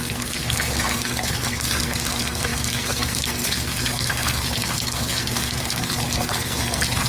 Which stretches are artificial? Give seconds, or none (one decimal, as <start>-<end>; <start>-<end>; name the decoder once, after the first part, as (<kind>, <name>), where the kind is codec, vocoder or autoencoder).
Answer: 0.0-7.1 (codec, SNAC)

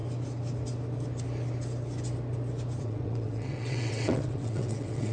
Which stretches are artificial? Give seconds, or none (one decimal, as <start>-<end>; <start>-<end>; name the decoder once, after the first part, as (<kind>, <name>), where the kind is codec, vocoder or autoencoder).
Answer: 2.8-5.1 (vocoder, WaveNeXt)

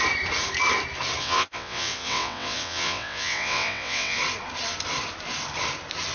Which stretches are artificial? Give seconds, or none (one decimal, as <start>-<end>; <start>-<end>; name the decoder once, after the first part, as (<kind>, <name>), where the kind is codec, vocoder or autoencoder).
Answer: 1.2-4.2 (vocoder, WaveNeXt)

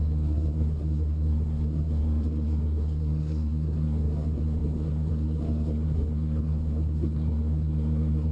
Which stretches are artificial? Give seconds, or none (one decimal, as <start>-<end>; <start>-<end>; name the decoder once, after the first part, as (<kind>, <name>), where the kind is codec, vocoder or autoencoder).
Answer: 0.0-8.3 (codec, SNAC)

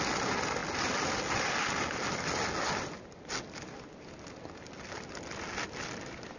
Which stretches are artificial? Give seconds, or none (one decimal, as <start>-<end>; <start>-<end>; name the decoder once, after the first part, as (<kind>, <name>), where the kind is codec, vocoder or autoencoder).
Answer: none

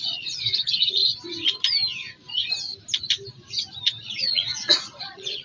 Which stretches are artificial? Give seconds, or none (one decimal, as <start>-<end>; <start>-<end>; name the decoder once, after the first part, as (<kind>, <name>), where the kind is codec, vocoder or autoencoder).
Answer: 0.0-1.0 (vocoder, Vocos); 4.2-5.4

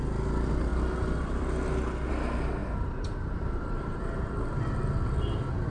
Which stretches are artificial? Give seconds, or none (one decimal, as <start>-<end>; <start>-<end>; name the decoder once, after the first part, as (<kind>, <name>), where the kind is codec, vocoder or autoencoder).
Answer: 2.6-4.6 (vocoder, BigVGAN v2)

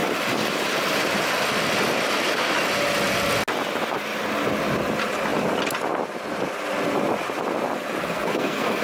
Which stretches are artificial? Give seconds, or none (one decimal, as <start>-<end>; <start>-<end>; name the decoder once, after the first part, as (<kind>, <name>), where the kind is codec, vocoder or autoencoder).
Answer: 8.0-8.8 (codec, SNAC)